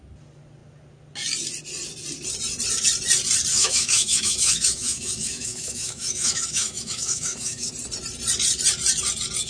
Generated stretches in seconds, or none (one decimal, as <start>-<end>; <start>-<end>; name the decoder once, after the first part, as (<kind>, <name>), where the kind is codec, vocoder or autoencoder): 3.5-7.7 (autoencoder, DAC-VAE)